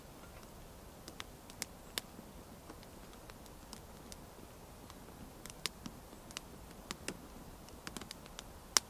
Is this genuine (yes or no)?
yes